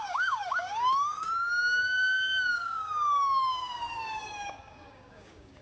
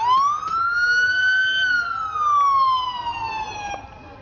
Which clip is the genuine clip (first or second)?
second